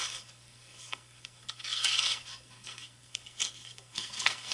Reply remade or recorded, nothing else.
remade